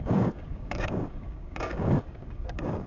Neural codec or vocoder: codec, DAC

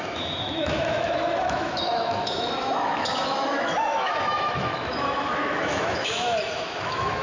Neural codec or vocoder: autoencoder, DAC-VAE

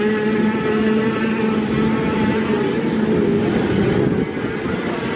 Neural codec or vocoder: none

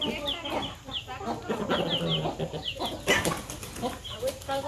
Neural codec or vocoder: none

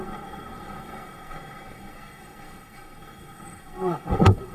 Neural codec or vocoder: codec, SNAC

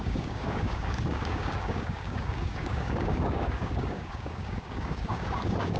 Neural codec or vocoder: codec, DAC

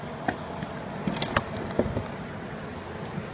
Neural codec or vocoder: none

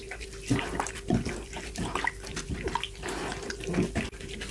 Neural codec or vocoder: none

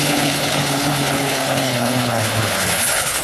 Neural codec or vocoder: codec, HILCodec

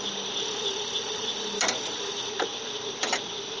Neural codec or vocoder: none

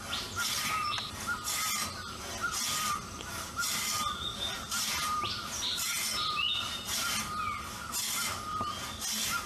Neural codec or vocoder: none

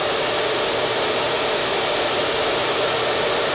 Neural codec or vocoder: none